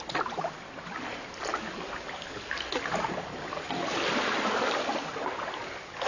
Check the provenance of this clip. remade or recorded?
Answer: recorded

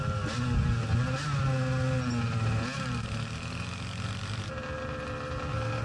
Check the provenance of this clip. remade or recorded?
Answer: recorded